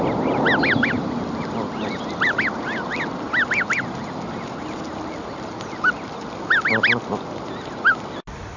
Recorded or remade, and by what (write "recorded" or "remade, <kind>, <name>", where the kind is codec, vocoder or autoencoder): recorded